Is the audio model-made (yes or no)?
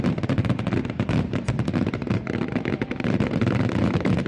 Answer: yes